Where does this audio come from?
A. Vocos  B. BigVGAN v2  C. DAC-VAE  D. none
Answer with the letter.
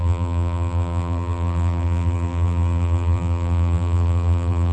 B